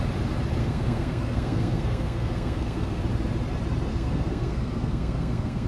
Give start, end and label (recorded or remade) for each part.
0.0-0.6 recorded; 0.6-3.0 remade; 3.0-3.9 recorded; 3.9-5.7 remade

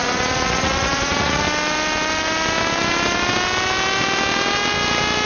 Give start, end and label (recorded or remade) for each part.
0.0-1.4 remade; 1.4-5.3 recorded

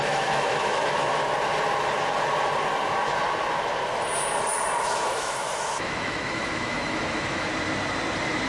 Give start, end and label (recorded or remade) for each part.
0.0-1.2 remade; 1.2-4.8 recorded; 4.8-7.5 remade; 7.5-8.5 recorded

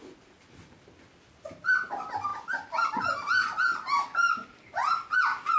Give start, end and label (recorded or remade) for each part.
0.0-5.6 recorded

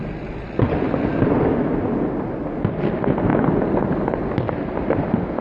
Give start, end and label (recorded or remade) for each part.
0.0-5.4 recorded